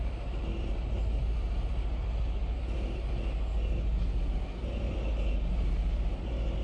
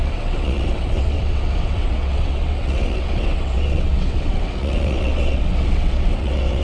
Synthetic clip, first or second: second